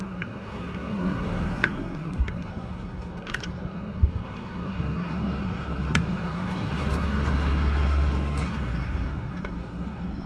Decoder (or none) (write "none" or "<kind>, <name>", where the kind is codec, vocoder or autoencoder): codec, SNAC